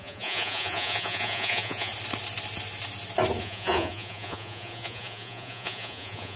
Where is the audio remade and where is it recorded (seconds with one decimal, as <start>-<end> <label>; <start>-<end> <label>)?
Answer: 0.0-1.9 remade; 1.9-3.4 recorded; 3.4-6.4 remade